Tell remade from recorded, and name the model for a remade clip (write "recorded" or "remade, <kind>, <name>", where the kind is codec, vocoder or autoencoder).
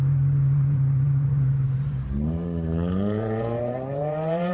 remade, vocoder, BigVGAN v2